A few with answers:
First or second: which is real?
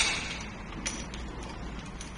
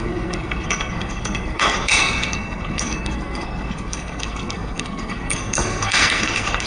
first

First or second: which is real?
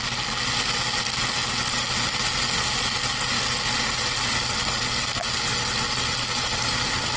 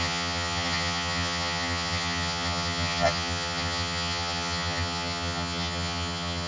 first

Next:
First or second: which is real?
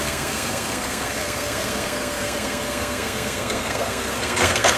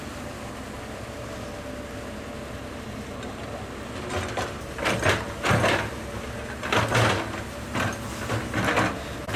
second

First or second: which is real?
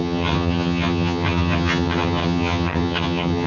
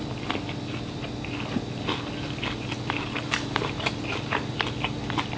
second